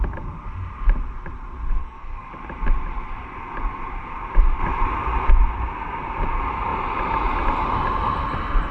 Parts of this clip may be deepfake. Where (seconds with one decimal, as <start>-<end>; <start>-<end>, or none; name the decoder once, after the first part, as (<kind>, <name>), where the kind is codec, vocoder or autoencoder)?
1.8-2.3 (codec, SNAC)